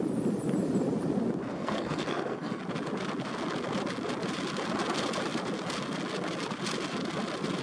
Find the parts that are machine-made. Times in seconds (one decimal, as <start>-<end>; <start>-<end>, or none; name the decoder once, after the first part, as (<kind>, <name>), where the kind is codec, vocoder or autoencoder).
1.4-2.6 (codec, SNAC)